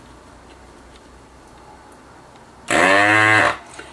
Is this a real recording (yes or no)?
yes